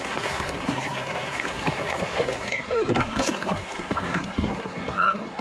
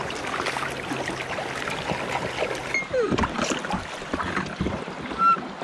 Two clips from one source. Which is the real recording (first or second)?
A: second